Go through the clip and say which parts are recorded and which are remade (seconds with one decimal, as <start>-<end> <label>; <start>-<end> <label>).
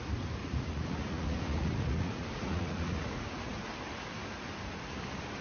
0.0-0.4 recorded; 0.4-3.6 remade; 3.6-5.4 recorded